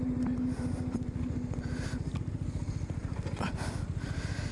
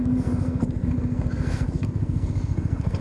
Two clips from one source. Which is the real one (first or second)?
first